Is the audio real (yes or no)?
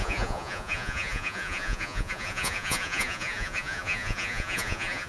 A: no